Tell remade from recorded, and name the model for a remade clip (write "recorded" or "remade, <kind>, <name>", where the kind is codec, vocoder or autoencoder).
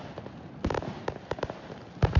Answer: recorded